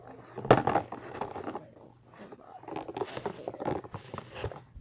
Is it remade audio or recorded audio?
recorded